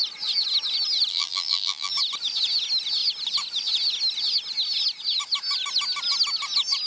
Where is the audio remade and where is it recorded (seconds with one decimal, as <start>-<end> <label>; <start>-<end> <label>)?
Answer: 0.0-1.1 recorded; 1.1-1.9 remade; 1.9-6.9 recorded